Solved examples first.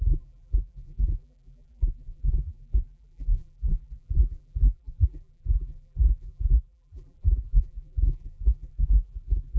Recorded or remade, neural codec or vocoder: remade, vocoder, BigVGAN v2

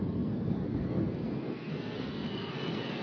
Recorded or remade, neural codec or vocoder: remade, codec, SNAC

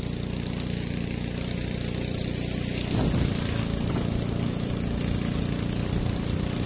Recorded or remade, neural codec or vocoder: recorded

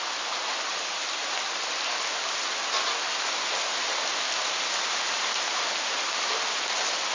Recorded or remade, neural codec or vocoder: recorded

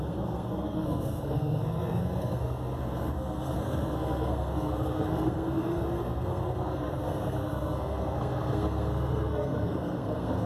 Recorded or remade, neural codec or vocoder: remade, codec, SNAC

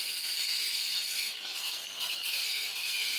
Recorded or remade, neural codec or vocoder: remade, codec, SNAC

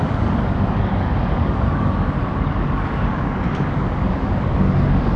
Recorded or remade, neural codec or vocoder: remade, codec, DAC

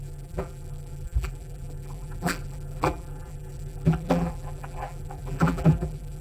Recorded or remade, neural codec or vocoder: remade, vocoder, BigVGAN v2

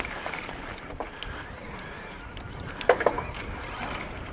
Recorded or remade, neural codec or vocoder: remade, vocoder, BigVGAN v2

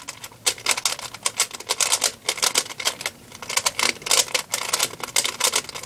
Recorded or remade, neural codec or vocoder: recorded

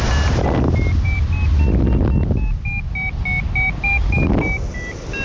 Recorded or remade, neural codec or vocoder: recorded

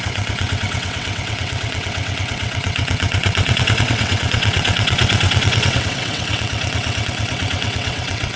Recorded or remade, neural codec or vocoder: remade, vocoder, WaveNeXt